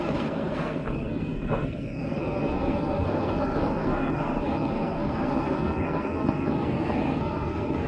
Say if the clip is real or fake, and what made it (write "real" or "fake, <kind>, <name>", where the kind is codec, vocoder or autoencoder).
fake, codec, SNAC